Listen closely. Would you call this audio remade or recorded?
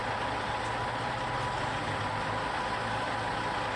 recorded